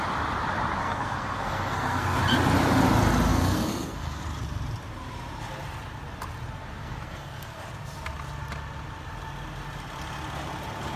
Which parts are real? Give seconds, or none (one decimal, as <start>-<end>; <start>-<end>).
0.0-0.8; 2.2-3.3; 4.2-6.8; 7.6-11.0